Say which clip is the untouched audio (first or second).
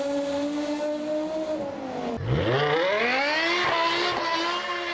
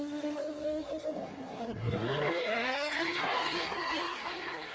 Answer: first